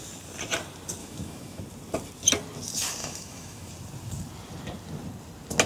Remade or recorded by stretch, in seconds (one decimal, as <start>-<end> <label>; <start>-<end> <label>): 0.0-1.0 recorded; 1.0-1.6 remade; 1.6-3.0 recorded; 3.0-3.7 remade; 3.7-5.7 recorded